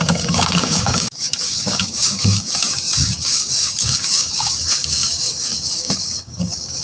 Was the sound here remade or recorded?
remade